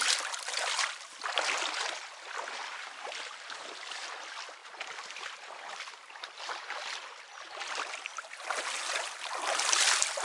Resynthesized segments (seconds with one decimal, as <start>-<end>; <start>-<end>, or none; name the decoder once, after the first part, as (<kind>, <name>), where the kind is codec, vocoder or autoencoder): none